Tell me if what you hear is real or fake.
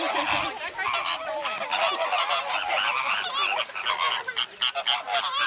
real